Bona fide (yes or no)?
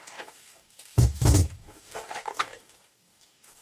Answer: no